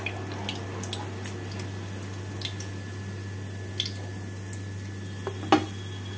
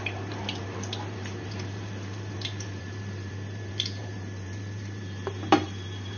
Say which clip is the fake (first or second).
second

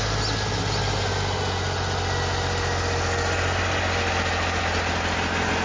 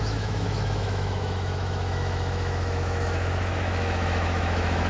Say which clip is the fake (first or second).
second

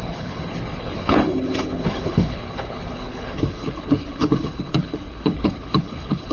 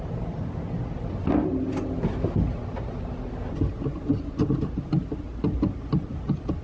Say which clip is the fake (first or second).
first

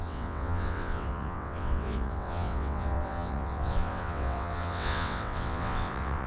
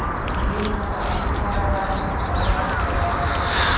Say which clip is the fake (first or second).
first